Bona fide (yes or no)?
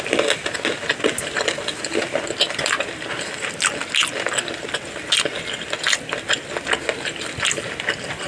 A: yes